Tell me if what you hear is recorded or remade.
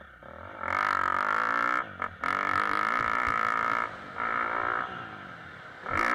recorded